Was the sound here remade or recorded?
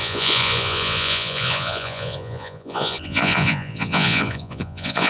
remade